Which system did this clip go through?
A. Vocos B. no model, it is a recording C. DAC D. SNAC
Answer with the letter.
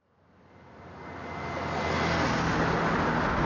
B